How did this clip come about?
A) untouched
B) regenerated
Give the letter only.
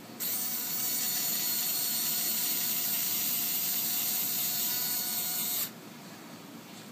B